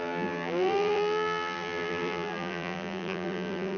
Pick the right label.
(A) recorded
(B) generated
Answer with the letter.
B